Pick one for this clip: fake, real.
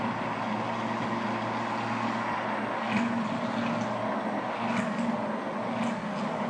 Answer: real